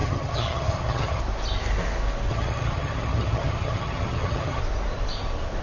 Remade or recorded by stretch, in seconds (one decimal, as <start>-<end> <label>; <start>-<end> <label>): 0.0-1.2 remade; 1.2-2.3 recorded; 2.3-4.6 remade; 4.6-5.6 recorded